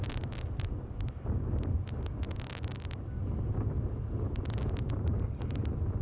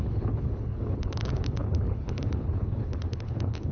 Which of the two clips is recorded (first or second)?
first